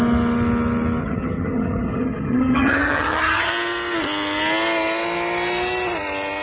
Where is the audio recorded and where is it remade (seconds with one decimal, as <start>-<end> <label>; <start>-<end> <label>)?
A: 0.0-1.0 recorded; 1.0-3.5 remade; 3.5-6.4 recorded